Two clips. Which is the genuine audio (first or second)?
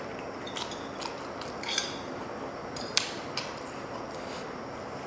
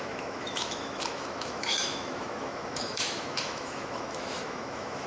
first